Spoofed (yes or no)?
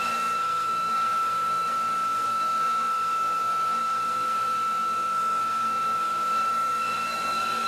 yes